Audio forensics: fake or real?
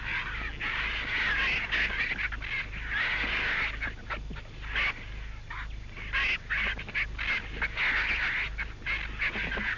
real